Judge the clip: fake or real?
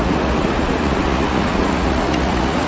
fake